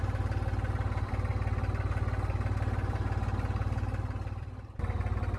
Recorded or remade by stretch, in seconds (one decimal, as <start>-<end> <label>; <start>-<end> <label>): 0.0-1.3 remade; 1.3-4.4 recorded; 4.4-5.4 remade